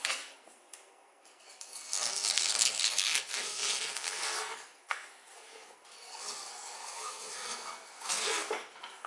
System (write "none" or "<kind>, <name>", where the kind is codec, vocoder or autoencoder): codec, SNAC